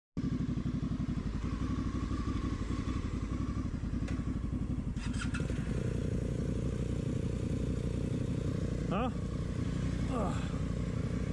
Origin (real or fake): real